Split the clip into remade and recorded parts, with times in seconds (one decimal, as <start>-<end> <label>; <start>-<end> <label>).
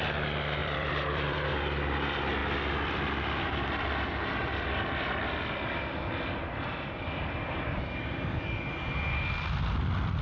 0.0-0.6 recorded; 0.6-1.5 remade; 1.5-2.4 recorded; 2.4-6.0 remade; 6.0-10.2 recorded